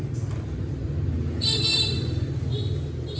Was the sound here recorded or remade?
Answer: recorded